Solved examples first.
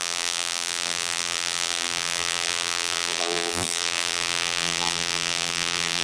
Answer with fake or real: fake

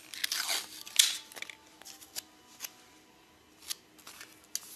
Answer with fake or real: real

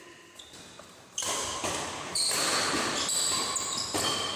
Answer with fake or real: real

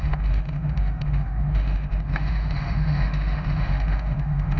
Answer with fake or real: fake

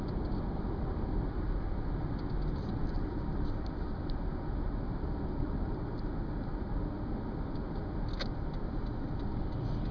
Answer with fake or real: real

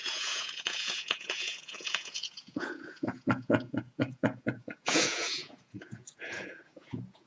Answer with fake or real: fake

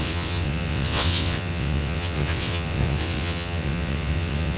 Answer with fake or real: fake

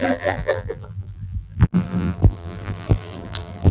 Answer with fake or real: fake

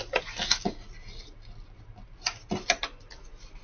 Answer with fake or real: real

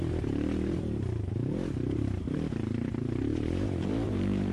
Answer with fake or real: fake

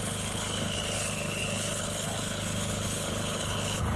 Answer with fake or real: fake